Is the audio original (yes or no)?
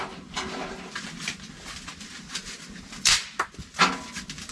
yes